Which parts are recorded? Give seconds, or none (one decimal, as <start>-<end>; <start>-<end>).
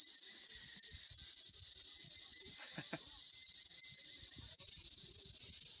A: 0.0-2.3; 3.1-4.1; 4.7-5.8